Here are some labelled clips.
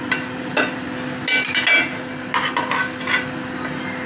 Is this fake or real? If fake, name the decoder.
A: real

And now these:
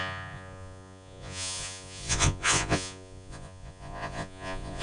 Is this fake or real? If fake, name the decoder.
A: fake, vocoder, Vocos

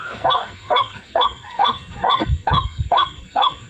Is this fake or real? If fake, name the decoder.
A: fake, codec, SNAC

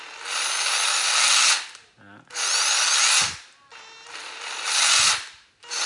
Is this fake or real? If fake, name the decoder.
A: real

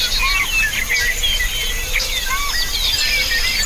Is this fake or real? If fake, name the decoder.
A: real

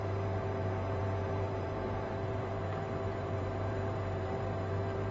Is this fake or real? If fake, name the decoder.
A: fake, vocoder, BigVGAN v2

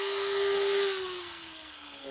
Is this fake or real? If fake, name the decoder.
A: fake, codec, SNAC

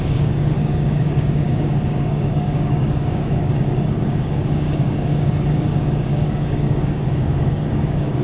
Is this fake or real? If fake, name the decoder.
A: fake, codec, DAC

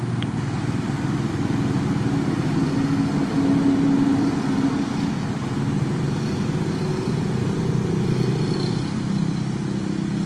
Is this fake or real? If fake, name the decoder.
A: real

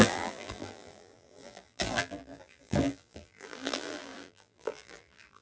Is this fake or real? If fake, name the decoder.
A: fake, vocoder, BigVGAN v2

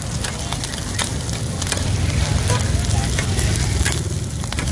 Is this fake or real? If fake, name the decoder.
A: real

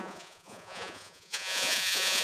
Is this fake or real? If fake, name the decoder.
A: fake, vocoder, Vocos